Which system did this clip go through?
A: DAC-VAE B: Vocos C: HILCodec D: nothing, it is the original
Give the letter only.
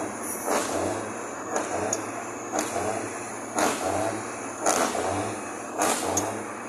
D